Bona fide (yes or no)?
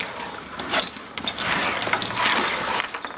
yes